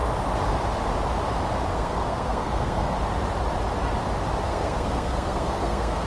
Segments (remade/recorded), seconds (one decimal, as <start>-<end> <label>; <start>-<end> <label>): 0.0-1.7 recorded; 1.7-2.9 remade; 2.9-4.5 recorded; 4.5-6.1 remade